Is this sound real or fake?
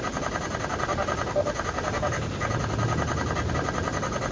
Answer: real